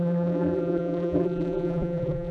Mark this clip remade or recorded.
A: remade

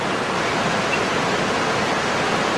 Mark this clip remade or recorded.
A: recorded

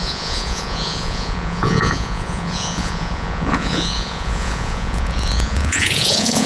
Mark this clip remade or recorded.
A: remade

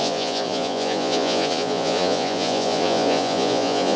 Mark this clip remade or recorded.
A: remade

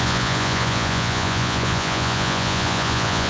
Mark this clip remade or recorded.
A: remade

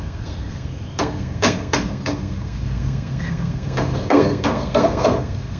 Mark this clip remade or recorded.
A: remade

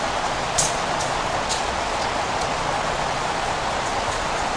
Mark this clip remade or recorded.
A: remade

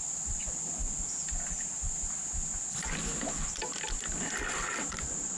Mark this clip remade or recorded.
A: recorded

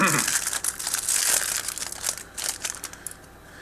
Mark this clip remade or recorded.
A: recorded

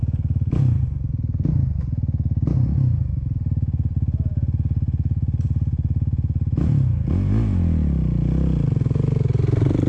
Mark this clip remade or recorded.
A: recorded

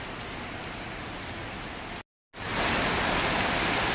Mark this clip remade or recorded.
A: recorded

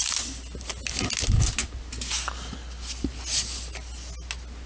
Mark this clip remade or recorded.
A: recorded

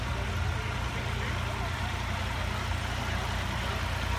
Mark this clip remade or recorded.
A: recorded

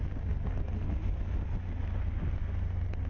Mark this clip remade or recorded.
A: recorded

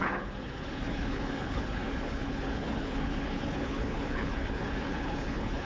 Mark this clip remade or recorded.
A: remade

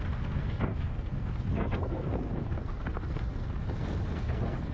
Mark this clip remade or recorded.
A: remade